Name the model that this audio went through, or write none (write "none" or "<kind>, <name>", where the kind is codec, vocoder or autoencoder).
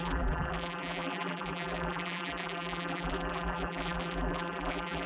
vocoder, BigVGAN v2